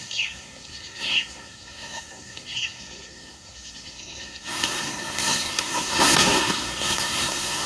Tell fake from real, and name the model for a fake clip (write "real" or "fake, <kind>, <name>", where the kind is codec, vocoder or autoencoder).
fake, codec, SNAC